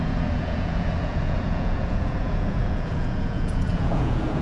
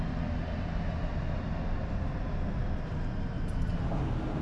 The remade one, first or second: first